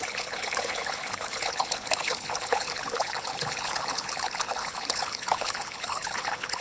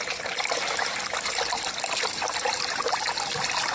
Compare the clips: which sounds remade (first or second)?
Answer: first